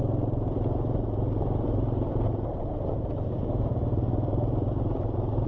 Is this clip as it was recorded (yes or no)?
no